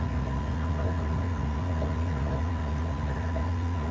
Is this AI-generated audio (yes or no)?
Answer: yes